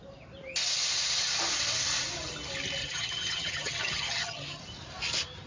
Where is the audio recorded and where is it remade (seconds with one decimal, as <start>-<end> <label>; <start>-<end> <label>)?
0.0-2.8 recorded; 2.8-4.6 remade; 4.6-5.5 recorded